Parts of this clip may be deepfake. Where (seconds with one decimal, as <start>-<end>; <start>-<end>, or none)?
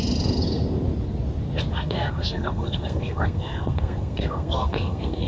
1.7-5.3